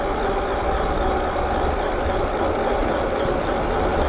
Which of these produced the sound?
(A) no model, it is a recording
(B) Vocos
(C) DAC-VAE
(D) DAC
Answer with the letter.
A